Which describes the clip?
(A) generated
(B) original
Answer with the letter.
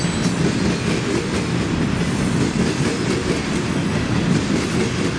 B